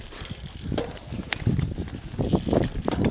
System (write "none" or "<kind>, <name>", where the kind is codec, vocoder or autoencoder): vocoder, BigVGAN v2